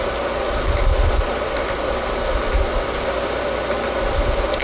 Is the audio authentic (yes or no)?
yes